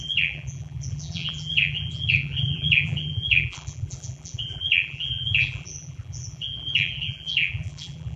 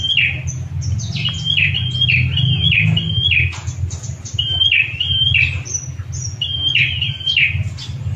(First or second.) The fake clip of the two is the first